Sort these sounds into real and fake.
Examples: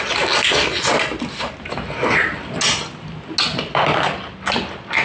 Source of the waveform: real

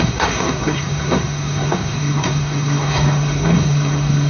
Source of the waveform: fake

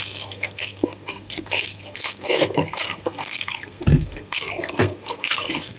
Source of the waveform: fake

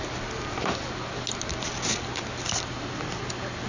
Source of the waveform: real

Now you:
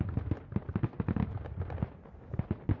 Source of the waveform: real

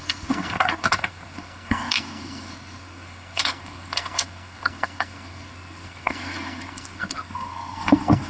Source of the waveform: fake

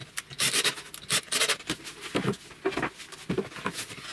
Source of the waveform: real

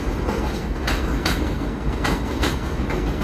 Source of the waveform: fake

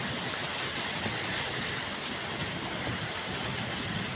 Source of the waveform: real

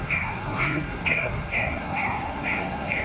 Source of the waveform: fake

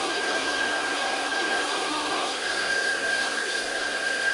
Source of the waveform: fake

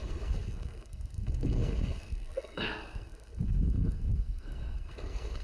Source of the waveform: fake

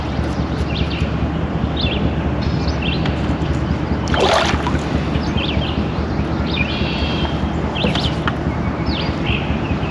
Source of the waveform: real